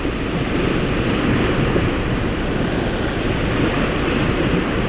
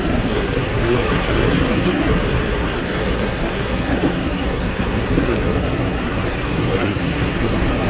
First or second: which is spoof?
second